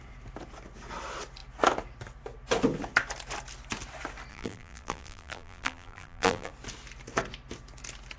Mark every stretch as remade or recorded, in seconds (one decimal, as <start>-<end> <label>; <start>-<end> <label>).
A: 0.0-4.3 recorded; 4.3-6.5 remade; 6.5-8.2 recorded